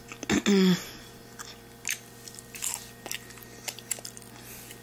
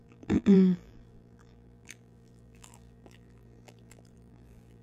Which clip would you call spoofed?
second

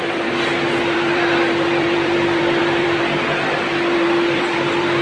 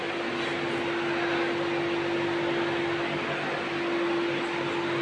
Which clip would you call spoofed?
first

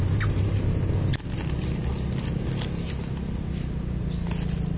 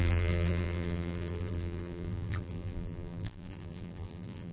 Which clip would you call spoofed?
second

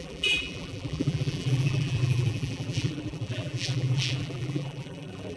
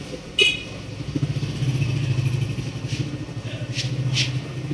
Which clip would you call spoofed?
first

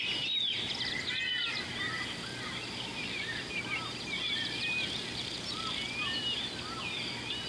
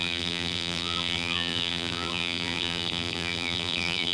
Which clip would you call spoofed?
second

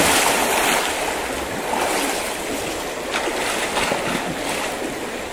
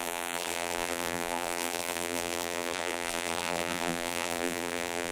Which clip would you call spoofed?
second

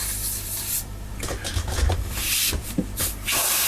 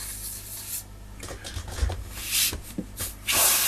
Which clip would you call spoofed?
first